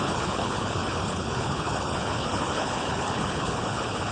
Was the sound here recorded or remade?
remade